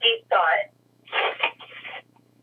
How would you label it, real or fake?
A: fake